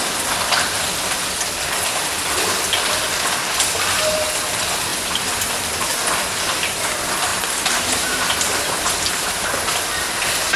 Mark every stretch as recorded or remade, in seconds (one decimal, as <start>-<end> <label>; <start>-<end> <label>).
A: 0.0-7.3 recorded; 7.3-9.1 remade; 9.1-10.6 recorded